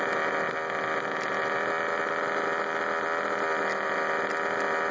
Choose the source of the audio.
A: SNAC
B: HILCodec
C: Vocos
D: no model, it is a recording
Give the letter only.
D